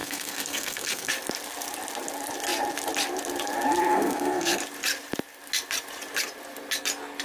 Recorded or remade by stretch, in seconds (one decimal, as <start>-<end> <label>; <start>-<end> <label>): 0.0-1.1 remade; 1.1-3.9 recorded; 3.9-4.6 remade; 4.6-7.2 recorded